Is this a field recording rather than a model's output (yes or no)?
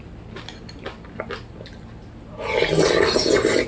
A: yes